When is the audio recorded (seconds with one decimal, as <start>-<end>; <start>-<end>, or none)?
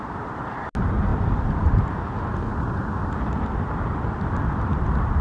0.0-5.2